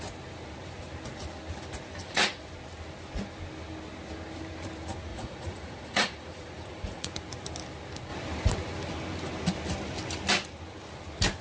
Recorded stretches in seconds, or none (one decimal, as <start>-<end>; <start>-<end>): 0.0-2.0; 2.5-5.1; 7.1-11.4